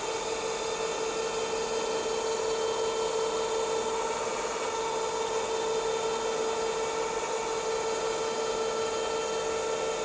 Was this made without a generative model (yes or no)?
yes